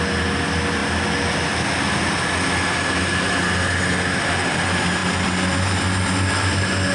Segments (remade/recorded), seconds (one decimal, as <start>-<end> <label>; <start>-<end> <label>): 0.0-6.9 recorded